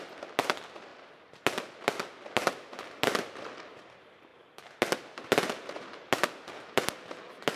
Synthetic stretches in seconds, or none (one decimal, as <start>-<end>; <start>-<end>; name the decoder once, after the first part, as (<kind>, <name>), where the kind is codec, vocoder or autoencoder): none